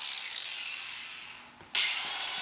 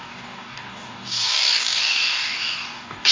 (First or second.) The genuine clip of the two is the first